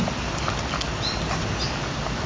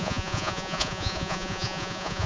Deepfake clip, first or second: second